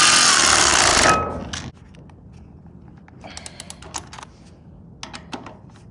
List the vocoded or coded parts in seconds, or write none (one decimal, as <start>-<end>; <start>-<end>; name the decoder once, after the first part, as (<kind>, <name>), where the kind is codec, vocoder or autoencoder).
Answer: none